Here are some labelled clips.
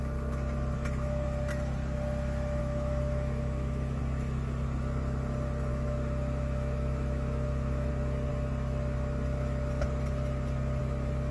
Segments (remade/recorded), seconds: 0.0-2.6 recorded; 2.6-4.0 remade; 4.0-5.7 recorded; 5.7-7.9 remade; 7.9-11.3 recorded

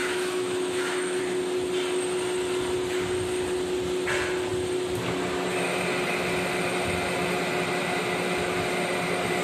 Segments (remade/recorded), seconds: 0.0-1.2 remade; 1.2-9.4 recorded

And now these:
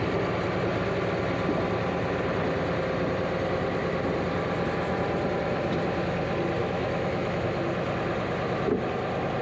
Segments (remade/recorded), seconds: 0.0-6.6 recorded; 6.6-7.4 remade; 7.4-9.4 recorded

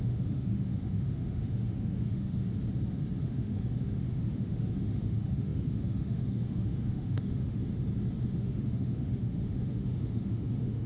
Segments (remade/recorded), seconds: 0.0-2.5 remade; 2.5-3.2 recorded; 3.2-7.6 remade; 7.6-8.2 recorded; 8.2-10.9 remade